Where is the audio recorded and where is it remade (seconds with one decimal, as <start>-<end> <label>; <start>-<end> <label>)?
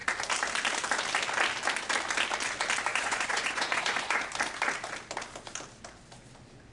0.0-2.9 recorded; 2.9-4.2 remade; 4.2-6.7 recorded